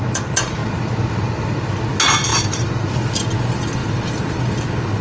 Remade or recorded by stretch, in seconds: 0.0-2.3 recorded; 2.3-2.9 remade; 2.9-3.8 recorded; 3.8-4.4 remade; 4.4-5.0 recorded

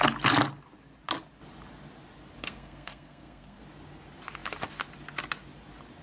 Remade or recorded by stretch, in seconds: 0.0-2.4 recorded; 2.4-3.6 remade; 3.6-6.0 recorded

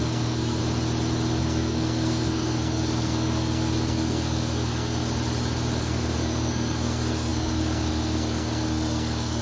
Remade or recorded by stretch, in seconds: 0.0-0.6 remade; 0.6-1.4 recorded; 1.4-5.0 remade; 5.0-5.8 recorded; 5.8-9.4 remade